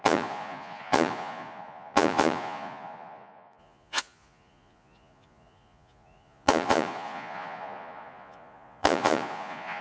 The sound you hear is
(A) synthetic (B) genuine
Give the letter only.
A